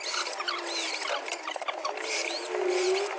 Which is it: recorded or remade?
recorded